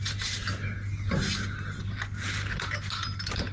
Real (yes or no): yes